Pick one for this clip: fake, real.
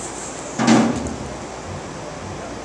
real